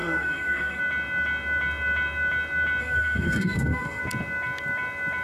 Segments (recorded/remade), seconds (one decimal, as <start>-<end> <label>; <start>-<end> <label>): 0.0-0.8 remade; 0.8-2.8 recorded; 2.8-4.0 remade; 4.0-5.2 recorded